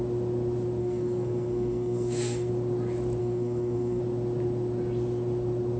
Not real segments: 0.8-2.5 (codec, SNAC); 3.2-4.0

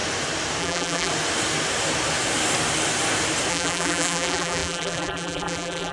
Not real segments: 0.6-1.1 (vocoder, BigVGAN v2); 3.5-5.9

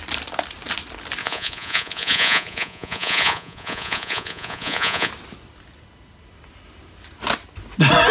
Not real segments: 1.2-5.1 (vocoder, Vocos)

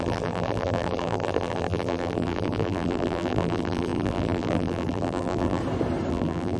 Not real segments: 0.0-5.6 (vocoder, BigVGAN v2); 6.1-6.6

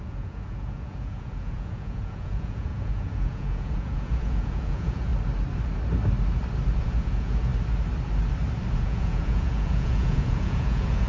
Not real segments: 0.0-5.1 (vocoder, Vocos); 6.8-7.5; 8.7-11.1

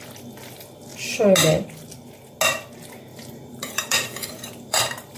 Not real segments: 3.1-4.8 (vocoder, BigVGAN v2)

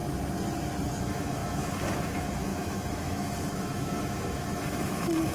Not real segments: 1.0-5.3 (autoencoder, DAC-VAE)

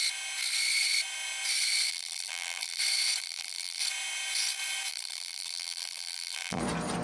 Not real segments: 1.9-2.8 (vocoder, BigVGAN v2); 3.2-3.8; 4.9-6.6